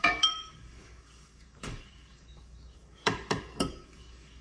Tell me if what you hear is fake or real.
fake